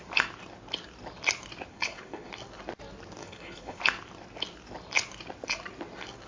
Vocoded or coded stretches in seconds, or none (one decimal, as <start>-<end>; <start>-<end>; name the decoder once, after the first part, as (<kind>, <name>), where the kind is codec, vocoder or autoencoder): 1.7-2.3 (codec, HILCodec); 3.2-3.8